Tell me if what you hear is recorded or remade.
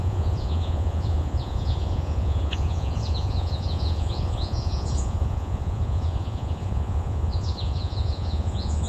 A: remade